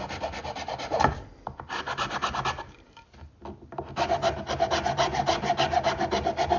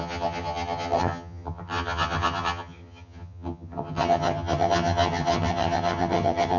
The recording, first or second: first